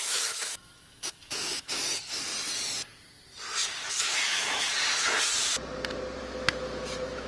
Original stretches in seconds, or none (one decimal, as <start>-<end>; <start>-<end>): 2.3-3.9; 4.7-6.2

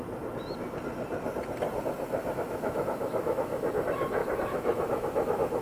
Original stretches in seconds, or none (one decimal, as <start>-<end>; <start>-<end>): 0.0-2.2; 3.7-4.2

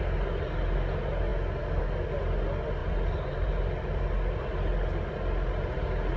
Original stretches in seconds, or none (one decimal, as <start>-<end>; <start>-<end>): 0.0-2.8; 4.4-6.2

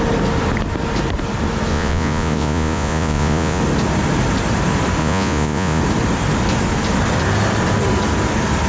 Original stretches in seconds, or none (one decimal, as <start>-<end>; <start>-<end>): 0.0-1.7; 3.6-5.0; 5.8-8.7

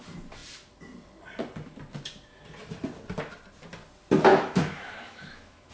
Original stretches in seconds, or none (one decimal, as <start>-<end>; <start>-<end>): 0.0-4.3

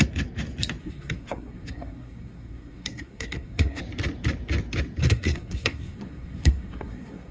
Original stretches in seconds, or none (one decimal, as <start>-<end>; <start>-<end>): 0.0-0.8; 3.8-5.0

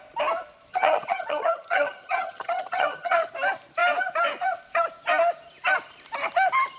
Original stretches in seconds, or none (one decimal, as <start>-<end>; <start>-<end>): 0.0-0.7; 3.3-6.8

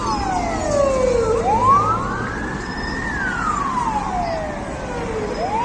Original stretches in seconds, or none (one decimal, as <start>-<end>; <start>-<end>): 0.0-5.6